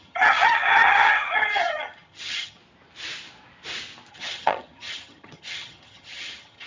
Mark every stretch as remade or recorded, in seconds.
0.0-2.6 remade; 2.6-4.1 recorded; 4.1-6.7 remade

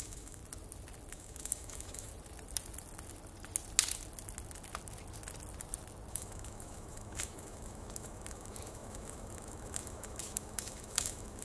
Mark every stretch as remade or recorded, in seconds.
0.0-0.4 remade; 0.4-1.1 recorded; 1.1-2.1 remade; 2.1-6.1 recorded; 6.1-11.4 remade

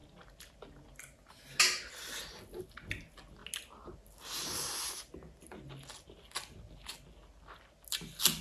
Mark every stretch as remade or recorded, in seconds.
0.0-8.4 recorded

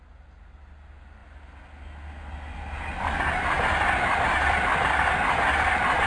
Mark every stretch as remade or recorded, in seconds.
0.0-6.1 recorded